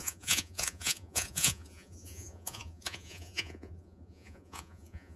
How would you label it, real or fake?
fake